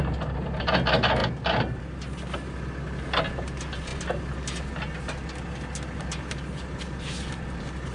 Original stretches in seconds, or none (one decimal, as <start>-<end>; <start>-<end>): 0.0-7.9